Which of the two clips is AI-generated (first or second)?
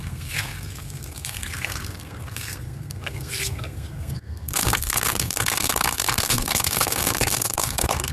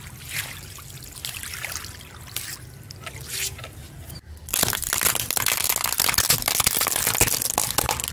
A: first